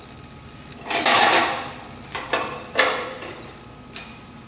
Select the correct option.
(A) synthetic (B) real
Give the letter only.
B